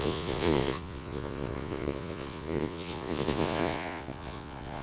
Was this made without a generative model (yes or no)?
no